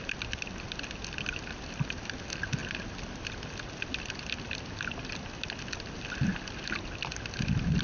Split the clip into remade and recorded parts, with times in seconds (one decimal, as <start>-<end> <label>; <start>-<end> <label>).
0.0-7.8 recorded